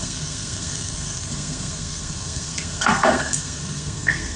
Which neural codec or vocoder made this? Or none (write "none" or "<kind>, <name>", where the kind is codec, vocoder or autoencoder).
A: codec, SNAC